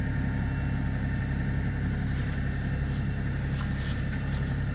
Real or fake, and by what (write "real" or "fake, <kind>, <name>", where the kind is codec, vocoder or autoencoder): real